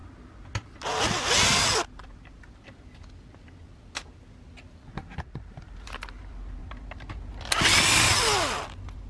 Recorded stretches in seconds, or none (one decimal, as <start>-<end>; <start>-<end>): 0.0-9.1